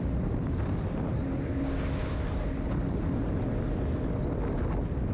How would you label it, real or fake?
real